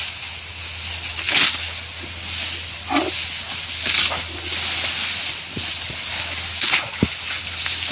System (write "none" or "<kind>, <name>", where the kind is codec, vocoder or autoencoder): none